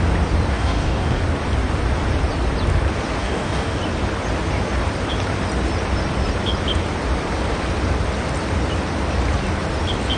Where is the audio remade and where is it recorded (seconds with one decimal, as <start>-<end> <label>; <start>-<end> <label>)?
0.0-0.5 recorded; 0.5-1.2 remade; 1.2-3.2 recorded; 3.2-3.8 remade; 3.8-10.2 recorded

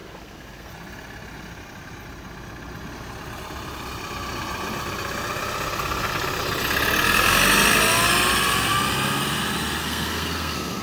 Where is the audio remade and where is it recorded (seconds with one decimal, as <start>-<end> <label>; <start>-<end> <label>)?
0.0-0.7 remade; 0.7-9.8 recorded; 9.8-10.8 remade

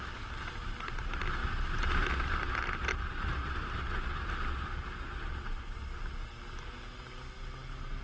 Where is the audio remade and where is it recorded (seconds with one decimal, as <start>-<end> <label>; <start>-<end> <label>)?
0.0-8.0 recorded

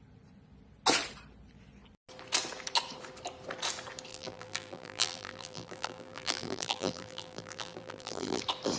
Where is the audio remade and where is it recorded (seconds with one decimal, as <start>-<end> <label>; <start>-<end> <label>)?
0.0-4.1 recorded; 4.1-8.4 remade; 8.4-8.8 recorded

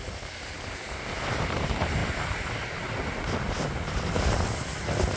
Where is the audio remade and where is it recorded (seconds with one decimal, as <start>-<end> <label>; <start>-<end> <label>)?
0.0-5.2 recorded

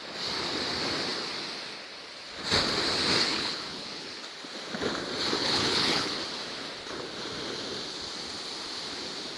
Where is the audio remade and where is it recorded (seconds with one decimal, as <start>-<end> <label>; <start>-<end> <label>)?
0.0-3.3 recorded; 3.3-4.2 remade; 4.2-5.4 recorded; 5.4-6.2 remade; 6.2-9.4 recorded

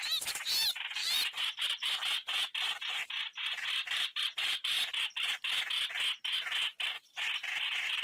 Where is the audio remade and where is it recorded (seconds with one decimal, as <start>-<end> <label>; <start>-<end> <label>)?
0.0-1.0 recorded; 1.0-2.0 remade; 2.0-3.8 recorded; 3.8-5.0 remade; 5.0-8.0 recorded

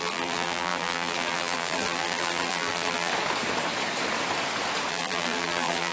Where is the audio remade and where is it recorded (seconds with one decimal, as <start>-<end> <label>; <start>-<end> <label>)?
0.0-3.1 remade; 3.1-4.9 recorded; 4.9-5.9 remade